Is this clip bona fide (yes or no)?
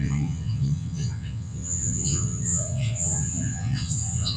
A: no